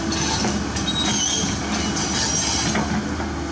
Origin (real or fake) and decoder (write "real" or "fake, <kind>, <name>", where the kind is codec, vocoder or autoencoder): real